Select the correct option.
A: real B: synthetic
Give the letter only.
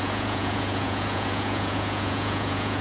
B